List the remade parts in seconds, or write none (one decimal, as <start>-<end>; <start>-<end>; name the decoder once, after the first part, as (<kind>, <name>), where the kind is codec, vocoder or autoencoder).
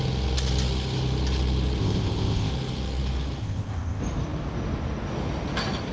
1.8-2.5 (codec, ZipCodec); 3.4-4.0